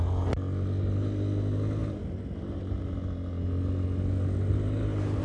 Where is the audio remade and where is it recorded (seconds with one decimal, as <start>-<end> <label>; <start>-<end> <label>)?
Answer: 0.0-5.2 recorded